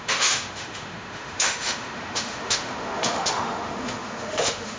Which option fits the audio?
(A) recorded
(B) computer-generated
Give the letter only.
B